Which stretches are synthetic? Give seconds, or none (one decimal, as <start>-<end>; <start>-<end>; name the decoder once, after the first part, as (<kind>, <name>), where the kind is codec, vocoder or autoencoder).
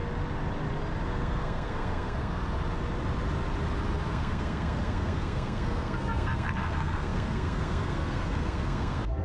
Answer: 1.1-2.4 (codec, SNAC); 4.1-9.2